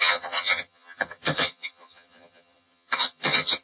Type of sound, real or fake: fake